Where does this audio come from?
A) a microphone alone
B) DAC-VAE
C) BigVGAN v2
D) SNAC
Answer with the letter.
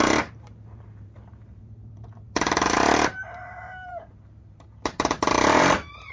C